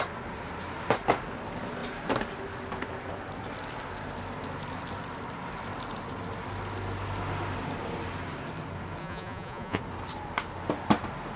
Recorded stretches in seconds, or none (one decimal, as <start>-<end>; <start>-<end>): 0.0-9.0; 9.8-11.4